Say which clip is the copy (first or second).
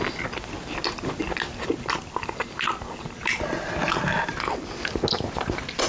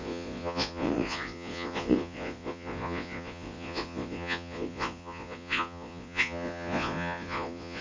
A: second